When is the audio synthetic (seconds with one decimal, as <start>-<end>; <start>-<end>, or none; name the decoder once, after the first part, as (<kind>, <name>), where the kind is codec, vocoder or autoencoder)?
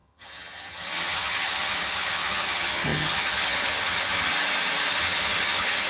0.0-4.3 (vocoder, HiFi-GAN); 4.9-5.9